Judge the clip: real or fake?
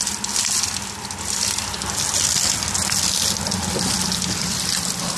real